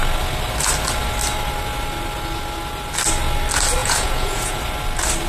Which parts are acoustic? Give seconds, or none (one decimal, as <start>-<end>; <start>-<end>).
0.0-3.8; 4.6-5.3